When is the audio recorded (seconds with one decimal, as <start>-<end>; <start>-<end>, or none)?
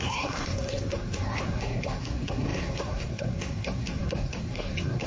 none